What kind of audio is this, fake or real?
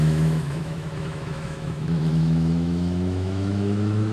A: fake